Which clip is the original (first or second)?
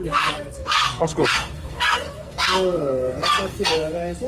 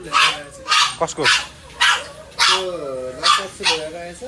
second